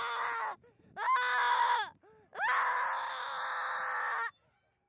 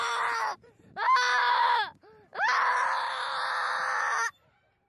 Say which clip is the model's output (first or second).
second